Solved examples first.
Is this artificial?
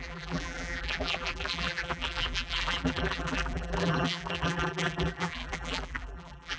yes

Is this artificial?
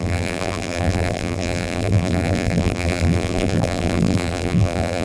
yes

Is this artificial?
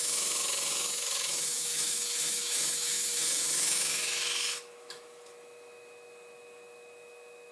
yes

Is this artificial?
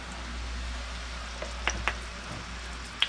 no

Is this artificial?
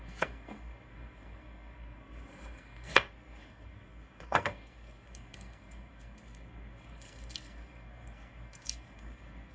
yes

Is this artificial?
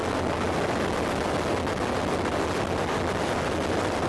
no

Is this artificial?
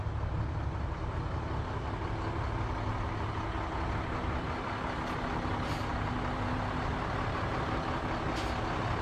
no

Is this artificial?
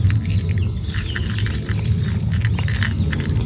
no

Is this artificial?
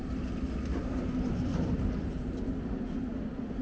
no